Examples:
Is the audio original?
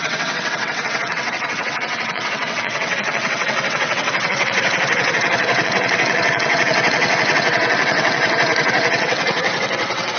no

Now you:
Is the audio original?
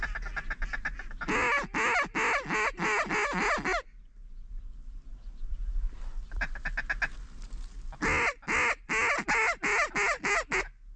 yes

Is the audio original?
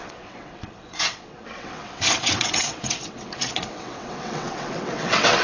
no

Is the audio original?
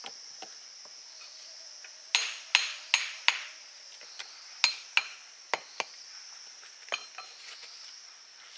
yes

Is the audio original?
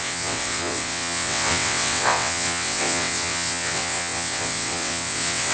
no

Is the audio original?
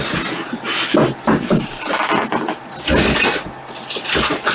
yes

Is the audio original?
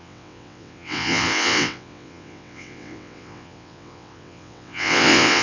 no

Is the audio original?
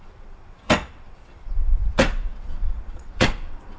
no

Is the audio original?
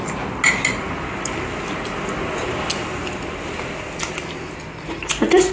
yes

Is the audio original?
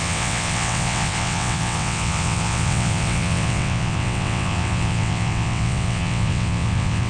no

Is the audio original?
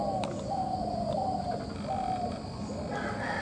yes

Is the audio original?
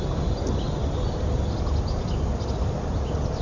yes